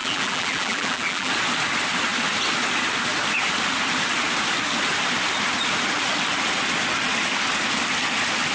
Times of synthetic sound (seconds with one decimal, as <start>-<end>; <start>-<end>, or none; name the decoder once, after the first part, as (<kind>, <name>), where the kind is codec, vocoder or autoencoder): 0.0-1.3 (vocoder, BigVGAN v2)